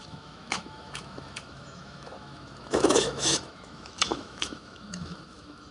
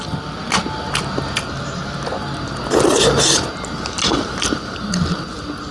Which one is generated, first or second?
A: first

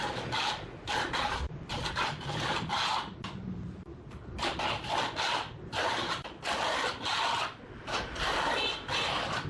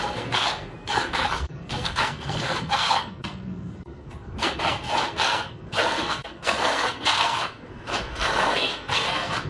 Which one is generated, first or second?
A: second